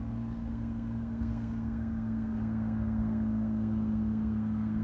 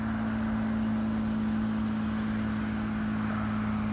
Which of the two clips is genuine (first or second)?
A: second